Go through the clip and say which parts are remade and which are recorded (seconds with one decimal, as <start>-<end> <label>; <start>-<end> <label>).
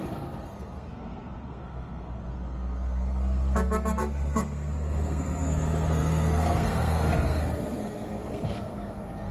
0.0-9.3 remade